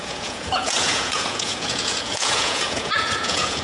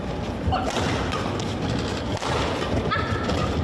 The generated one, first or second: first